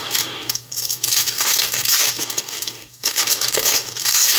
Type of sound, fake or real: fake